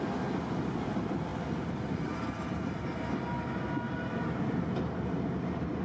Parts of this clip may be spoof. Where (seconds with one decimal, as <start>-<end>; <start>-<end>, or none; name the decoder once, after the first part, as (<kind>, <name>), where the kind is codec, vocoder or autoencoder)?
none